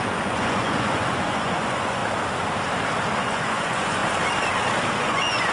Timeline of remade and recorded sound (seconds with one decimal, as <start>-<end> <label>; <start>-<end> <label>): 0.0-2.0 remade; 2.0-3.2 recorded; 3.2-4.0 remade; 4.0-5.0 recorded; 5.0-5.5 remade